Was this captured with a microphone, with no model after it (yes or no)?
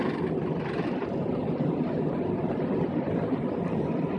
no